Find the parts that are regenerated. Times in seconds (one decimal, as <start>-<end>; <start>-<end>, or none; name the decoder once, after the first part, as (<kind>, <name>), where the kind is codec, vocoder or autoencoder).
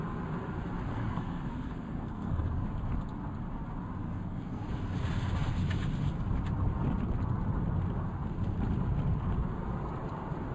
0.9-2.5 (codec, SNAC); 4.0-4.6